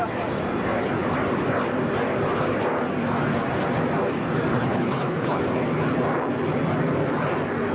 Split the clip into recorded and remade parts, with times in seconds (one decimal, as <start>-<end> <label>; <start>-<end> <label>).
0.0-4.5 recorded; 4.5-5.4 remade; 5.4-7.7 recorded

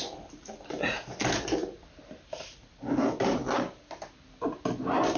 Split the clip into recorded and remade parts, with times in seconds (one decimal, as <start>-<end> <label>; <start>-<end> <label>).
0.0-5.2 recorded

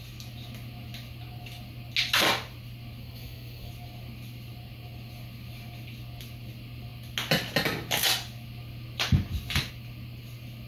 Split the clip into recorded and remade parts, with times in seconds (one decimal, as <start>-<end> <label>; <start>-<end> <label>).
0.0-3.0 recorded; 3.0-3.7 remade; 3.7-10.7 recorded

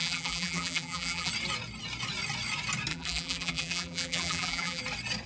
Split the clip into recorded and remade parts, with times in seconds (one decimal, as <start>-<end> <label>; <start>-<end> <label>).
0.0-1.3 remade; 1.3-2.9 recorded; 2.9-4.8 remade; 4.8-5.3 recorded